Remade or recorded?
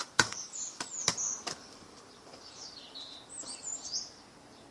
remade